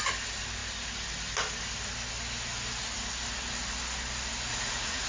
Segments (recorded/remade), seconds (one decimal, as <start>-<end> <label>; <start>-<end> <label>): 0.0-4.5 recorded; 4.5-5.1 remade